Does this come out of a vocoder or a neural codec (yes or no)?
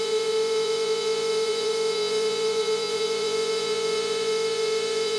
yes